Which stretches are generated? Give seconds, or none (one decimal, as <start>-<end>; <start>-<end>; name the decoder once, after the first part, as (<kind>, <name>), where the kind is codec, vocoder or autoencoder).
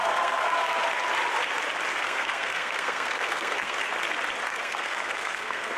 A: 0.0-0.8 (codec, SNAC); 1.9-3.8; 4.5-5.8